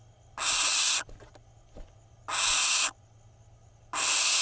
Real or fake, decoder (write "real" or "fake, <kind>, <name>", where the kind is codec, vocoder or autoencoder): real